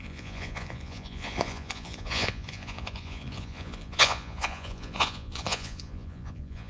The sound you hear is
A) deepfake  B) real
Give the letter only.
A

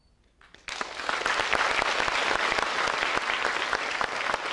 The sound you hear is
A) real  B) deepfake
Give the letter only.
A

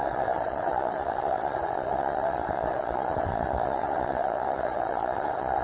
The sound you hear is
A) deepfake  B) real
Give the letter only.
A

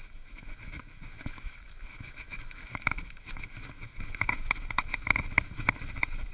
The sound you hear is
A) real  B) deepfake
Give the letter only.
B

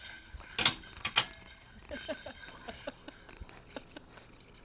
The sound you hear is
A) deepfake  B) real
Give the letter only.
B